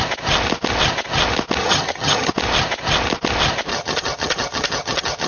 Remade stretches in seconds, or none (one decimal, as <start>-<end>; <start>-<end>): 1.6-2.3; 3.7-5.3